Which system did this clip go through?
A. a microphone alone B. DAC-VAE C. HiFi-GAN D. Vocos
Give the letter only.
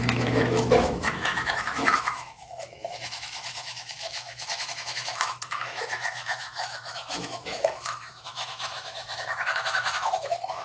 B